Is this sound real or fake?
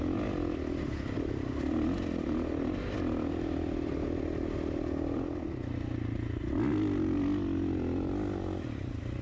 real